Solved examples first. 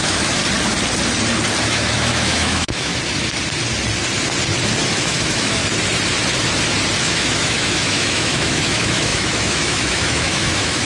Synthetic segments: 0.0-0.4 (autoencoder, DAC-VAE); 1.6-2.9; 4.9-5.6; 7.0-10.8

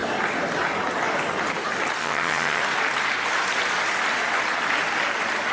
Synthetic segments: 2.0-2.6 (vocoder, HiFi-GAN)

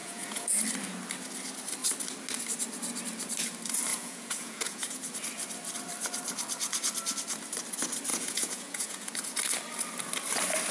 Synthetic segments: 0.0-0.6 (vocoder, Vocos); 3.9-5.1; 8.1-9.1

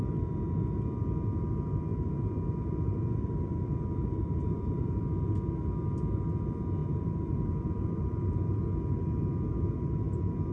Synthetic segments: 1.9-5.0 (vocoder, BigVGAN v2); 6.8-8.6

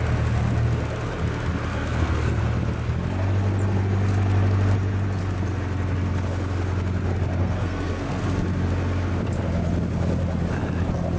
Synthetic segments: 1.7-2.4 (codec, SNAC); 7.4-8.2

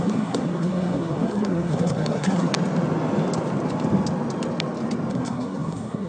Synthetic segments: 0.0-2.5 (codec, SNAC); 5.1-6.1